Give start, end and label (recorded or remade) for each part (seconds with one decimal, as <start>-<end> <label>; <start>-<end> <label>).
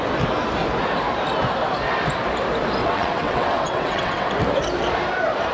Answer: 0.0-2.8 recorded; 2.8-4.3 remade; 4.3-5.5 recorded